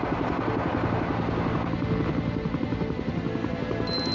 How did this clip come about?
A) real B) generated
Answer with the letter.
A